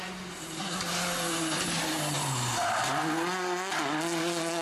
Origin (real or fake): real